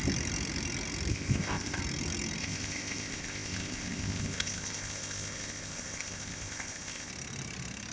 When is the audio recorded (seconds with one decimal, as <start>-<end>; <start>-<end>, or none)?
0.0-1.1; 1.8-2.4; 7.1-7.9